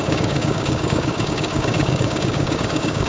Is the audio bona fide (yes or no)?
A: no